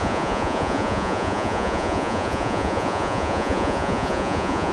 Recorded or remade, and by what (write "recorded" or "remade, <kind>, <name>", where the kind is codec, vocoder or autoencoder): remade, vocoder, Vocos